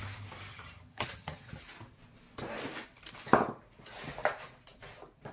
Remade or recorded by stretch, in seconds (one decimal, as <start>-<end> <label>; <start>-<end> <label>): 0.0-0.5 recorded; 0.5-1.5 remade; 1.5-5.3 recorded